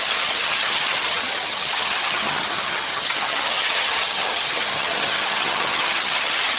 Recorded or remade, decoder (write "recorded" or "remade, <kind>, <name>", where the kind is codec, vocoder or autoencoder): remade, vocoder, HiFi-GAN